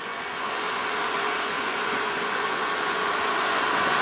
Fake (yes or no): yes